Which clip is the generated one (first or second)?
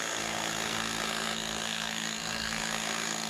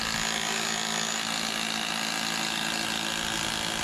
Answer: first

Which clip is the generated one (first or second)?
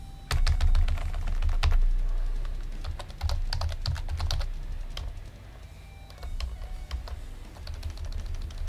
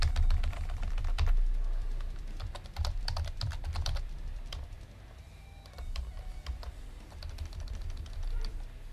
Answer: second